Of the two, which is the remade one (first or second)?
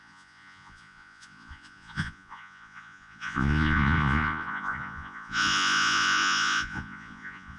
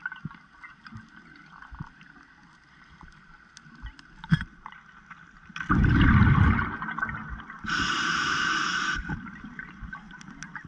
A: first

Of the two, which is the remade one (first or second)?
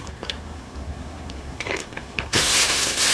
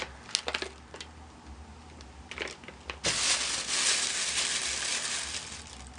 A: first